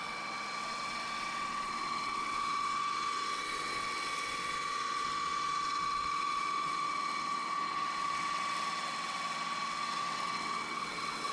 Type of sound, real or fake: fake